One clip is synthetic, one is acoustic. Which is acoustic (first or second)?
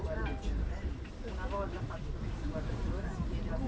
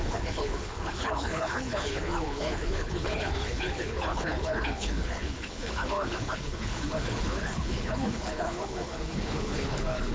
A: first